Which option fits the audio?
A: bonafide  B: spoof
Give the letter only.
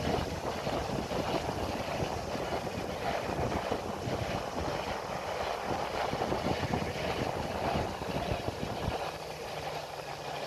A